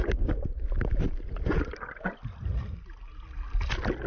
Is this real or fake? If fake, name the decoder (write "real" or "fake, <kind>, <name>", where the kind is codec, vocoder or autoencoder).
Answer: real